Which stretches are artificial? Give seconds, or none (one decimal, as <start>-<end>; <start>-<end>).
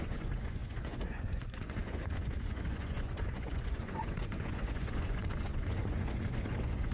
0.0-6.9